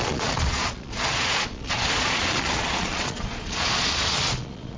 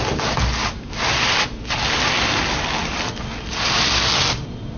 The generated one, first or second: first